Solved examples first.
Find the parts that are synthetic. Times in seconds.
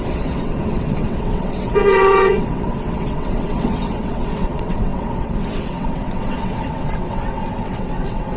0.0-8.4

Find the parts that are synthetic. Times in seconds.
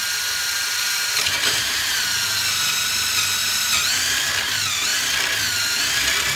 0.4-2.4; 3.4-4.3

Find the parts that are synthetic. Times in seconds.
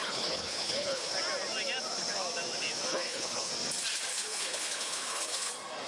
0.0-1.1; 2.9-3.5; 4.1-5.5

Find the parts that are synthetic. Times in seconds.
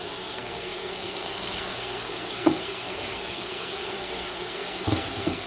0.0-5.5